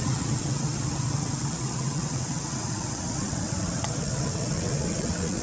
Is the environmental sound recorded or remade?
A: remade